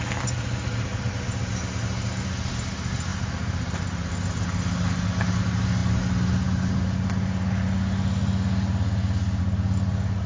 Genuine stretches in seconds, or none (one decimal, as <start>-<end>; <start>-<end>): 0.0-10.3